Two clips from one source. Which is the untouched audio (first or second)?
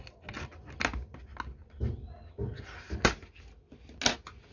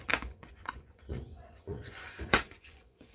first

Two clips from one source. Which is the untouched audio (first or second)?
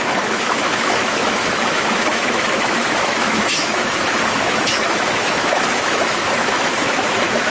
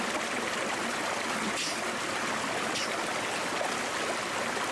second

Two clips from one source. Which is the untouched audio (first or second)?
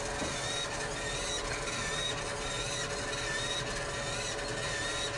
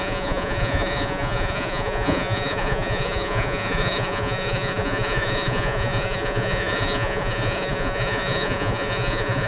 first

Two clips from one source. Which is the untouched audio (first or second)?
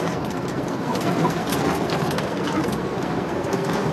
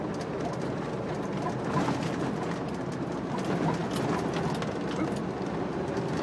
second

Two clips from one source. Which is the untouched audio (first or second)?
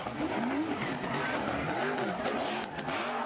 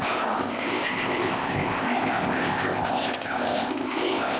first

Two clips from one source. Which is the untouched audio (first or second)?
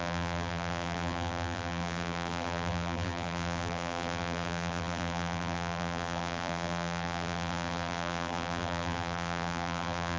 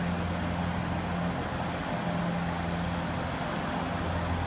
second